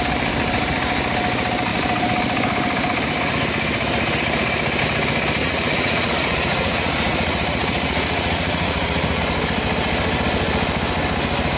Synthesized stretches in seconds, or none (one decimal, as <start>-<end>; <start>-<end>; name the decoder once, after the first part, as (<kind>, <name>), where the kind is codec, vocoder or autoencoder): 5.4-9.2 (vocoder, Vocos)